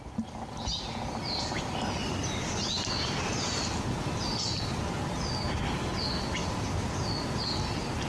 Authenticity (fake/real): real